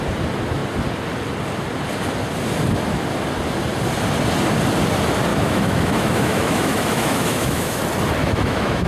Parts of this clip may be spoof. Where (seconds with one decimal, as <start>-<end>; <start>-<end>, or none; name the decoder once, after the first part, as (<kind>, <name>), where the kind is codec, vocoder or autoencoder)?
5.3-7.8 (autoencoder, DAC-VAE); 8.2-8.9